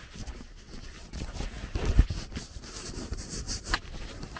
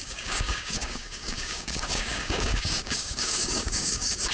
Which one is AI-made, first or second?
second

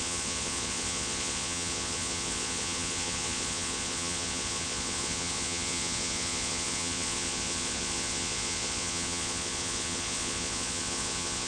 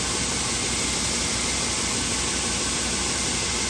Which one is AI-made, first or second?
first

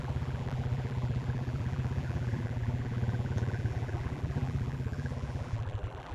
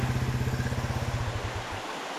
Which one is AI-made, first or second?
first